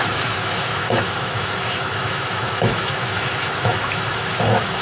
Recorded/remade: remade